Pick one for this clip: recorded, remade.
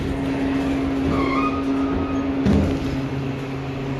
recorded